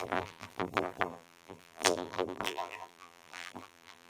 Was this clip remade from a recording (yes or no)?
yes